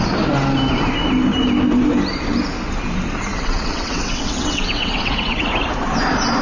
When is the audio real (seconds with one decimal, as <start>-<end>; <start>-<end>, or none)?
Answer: 0.0-3.3; 5.5-6.4